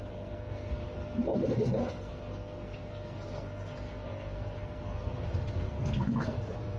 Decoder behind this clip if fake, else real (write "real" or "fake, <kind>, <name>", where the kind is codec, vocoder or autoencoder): fake, codec, SNAC